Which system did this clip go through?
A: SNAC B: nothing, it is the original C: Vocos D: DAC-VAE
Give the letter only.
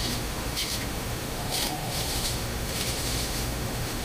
D